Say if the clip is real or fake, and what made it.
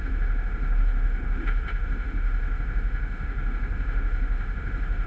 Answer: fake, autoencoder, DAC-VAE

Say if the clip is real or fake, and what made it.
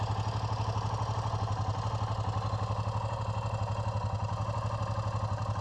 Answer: real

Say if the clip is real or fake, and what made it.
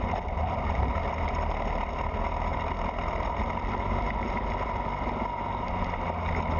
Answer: real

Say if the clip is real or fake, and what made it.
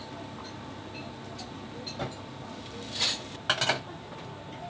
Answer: real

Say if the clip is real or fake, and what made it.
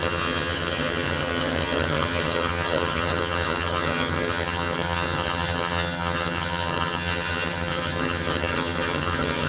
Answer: fake, vocoder, HiFi-GAN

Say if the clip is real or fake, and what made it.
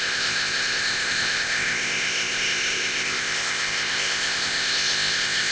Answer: fake, codec, ZipCodec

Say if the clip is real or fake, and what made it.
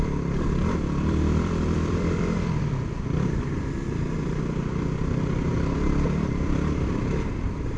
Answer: fake, vocoder, BigVGAN v2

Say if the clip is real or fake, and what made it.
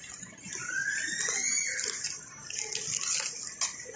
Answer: real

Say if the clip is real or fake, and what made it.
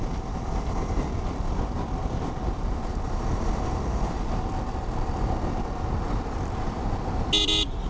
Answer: real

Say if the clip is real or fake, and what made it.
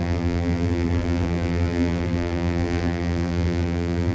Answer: fake, vocoder, BigVGAN v2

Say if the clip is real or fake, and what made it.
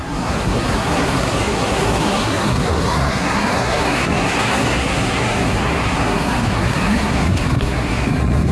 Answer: fake, codec, SNAC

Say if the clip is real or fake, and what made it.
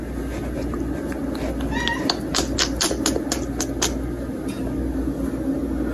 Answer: real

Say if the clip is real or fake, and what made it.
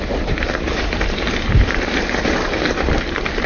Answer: fake, vocoder, BigVGAN v2